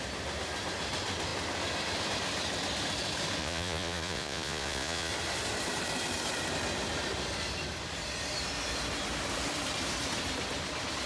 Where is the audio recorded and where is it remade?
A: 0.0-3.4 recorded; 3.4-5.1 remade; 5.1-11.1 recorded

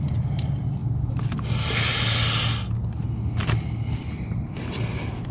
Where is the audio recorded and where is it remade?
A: 0.0-5.3 recorded

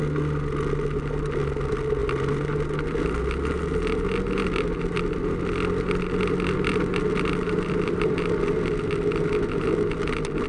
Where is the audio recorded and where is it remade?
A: 0.0-10.5 recorded

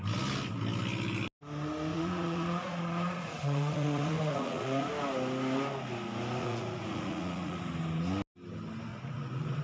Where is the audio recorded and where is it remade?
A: 0.0-1.9 recorded; 1.9-4.9 remade; 4.9-6.4 recorded; 6.4-7.6 remade; 7.6-8.9 recorded; 8.9-9.6 remade

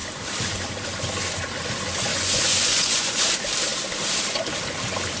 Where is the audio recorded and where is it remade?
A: 0.0-2.1 recorded; 2.1-3.3 remade; 3.3-5.2 recorded

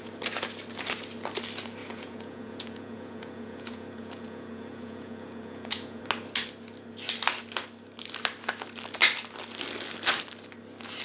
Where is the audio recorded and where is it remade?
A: 0.0-1.8 recorded; 1.8-6.0 remade; 6.0-11.0 recorded

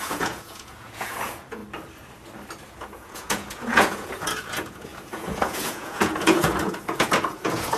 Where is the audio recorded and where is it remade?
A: 0.0-1.6 remade; 1.6-2.7 recorded; 2.7-7.8 remade

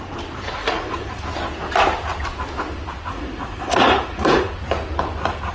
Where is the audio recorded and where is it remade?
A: 0.0-0.6 recorded; 0.6-1.2 remade; 1.2-3.1 recorded; 3.1-4.5 remade; 4.5-5.5 recorded